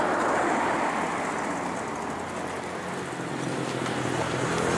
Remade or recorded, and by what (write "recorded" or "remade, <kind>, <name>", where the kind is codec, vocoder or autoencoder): recorded